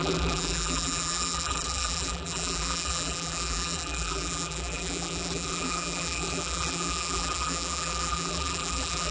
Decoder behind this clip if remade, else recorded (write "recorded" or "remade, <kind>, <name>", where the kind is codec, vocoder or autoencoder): remade, vocoder, BigVGAN v2